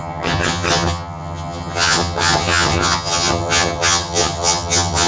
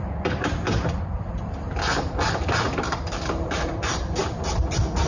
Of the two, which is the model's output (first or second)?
first